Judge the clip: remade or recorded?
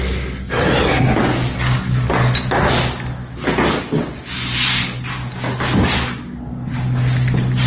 recorded